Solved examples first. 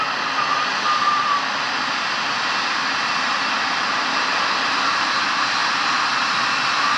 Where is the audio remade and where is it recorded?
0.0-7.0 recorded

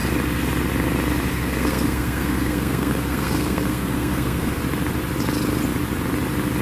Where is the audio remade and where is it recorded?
0.0-1.3 recorded; 1.3-4.6 remade; 4.6-6.6 recorded